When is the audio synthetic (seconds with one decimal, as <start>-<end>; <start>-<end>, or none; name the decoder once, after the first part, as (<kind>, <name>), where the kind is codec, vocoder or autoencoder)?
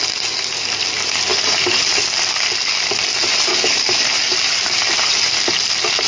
1.3-1.9 (vocoder, BigVGAN v2); 3.3-5.3